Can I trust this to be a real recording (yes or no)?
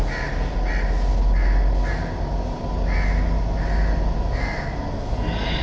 yes